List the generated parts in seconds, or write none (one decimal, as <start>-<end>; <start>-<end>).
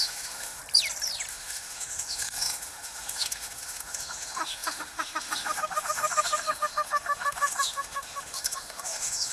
0.0-0.6; 1.3-9.3